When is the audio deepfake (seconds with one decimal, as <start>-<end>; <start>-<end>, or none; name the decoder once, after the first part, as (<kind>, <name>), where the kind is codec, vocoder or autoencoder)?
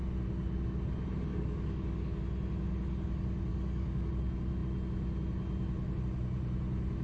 1.3-2.2 (codec, DAC); 3.5-4.1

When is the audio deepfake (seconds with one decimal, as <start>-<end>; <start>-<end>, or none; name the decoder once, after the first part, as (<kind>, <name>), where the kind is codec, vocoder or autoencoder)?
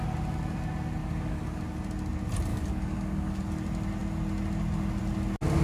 1.0-1.6 (codec, DAC); 2.5-3.4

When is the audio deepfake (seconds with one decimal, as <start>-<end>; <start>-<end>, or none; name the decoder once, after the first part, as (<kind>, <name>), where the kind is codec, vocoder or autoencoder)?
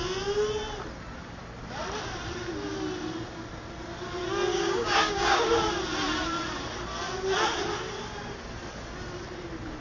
4.5-5.5 (codec, DAC)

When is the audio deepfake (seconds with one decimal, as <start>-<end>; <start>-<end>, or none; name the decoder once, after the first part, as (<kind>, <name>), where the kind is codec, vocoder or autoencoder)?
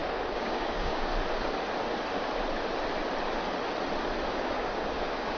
0.0-1.1 (codec, DAC); 4.3-5.4